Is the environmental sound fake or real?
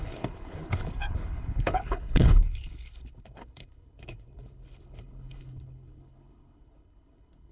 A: fake